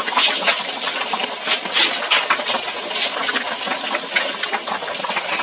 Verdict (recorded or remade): recorded